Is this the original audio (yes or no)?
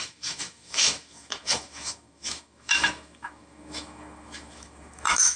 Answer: no